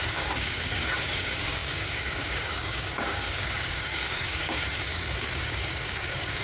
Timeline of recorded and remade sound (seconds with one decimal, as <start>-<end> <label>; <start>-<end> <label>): 0.0-6.4 remade